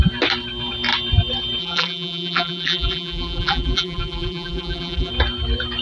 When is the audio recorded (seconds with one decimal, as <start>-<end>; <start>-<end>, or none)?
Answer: 0.0-1.6; 5.1-5.8